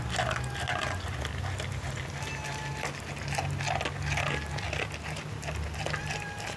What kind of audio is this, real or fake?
real